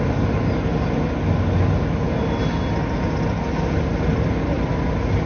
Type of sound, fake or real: real